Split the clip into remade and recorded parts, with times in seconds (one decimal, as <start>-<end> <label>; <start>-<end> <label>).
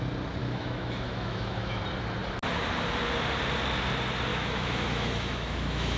0.0-0.4 recorded; 0.4-1.8 remade; 1.8-4.3 recorded; 4.3-6.0 remade